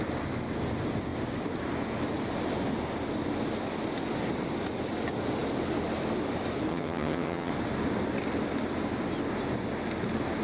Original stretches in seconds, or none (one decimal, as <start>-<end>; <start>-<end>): 0.0-6.7; 7.5-10.4